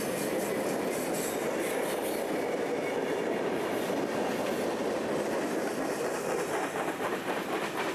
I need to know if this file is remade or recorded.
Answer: recorded